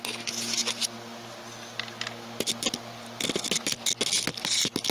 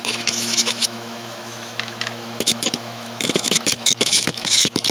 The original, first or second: first